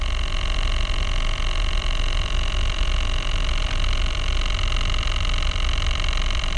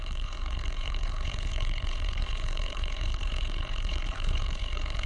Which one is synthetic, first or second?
second